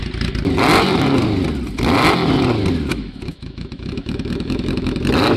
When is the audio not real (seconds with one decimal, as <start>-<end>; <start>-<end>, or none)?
2.9-5.0